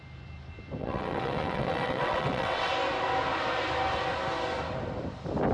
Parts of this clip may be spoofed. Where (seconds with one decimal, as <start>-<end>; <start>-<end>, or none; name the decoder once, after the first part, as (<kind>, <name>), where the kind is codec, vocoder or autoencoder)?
0.8-2.7 (vocoder, WaveNeXt)